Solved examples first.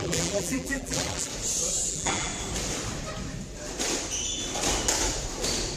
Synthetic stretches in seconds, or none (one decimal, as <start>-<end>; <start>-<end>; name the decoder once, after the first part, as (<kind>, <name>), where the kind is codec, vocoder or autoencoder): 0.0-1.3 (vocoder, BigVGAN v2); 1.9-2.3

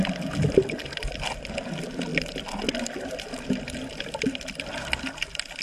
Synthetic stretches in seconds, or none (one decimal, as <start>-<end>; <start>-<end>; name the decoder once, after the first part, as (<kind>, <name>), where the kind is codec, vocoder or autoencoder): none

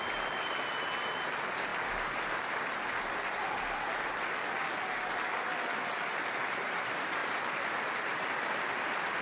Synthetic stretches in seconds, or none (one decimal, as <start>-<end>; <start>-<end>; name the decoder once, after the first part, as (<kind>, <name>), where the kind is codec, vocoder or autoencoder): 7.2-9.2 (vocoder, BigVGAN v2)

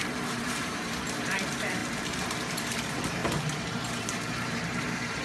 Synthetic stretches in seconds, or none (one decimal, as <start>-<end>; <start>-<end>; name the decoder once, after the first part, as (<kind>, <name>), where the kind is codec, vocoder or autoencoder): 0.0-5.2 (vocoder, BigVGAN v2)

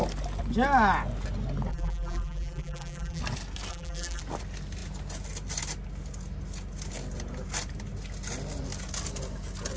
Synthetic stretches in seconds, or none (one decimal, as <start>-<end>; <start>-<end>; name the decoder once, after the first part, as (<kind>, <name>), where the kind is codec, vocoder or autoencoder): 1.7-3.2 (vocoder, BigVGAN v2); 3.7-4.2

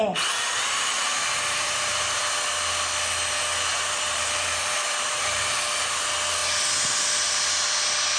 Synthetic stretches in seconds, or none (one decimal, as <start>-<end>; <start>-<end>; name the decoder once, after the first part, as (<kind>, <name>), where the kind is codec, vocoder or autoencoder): 0.5-2.2 (vocoder, BigVGAN v2); 3.7-5.4

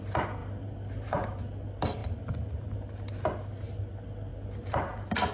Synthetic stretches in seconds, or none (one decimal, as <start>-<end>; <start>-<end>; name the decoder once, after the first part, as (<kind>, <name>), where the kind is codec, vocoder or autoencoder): 0.4-1.4 (vocoder, BigVGAN v2); 2.0-3.2

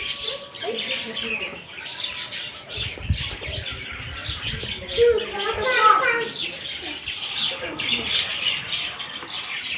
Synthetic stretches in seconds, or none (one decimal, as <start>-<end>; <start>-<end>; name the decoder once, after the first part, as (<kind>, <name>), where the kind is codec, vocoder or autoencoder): 0.0-4.2 (vocoder, BigVGAN v2); 7.6-9.8